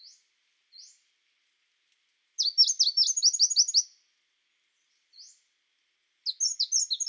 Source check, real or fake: real